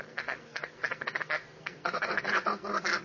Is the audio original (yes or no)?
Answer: no